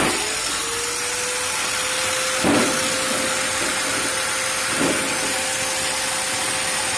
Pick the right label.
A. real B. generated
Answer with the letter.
A